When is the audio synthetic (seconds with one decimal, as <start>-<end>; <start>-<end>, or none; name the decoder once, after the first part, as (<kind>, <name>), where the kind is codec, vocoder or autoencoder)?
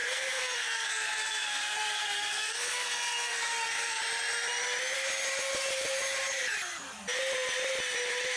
0.0-4.0 (codec, SNAC)